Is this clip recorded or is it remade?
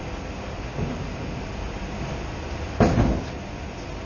recorded